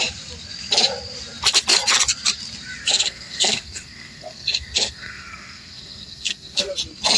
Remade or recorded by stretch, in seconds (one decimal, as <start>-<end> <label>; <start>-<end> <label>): 0.0-2.9 recorded; 2.9-6.7 remade; 6.7-7.2 recorded